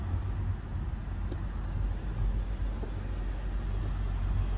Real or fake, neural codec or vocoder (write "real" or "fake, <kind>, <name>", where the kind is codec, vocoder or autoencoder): real